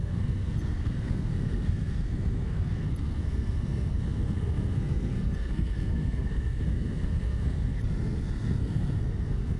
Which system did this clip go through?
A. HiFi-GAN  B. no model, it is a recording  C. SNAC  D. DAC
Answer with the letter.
C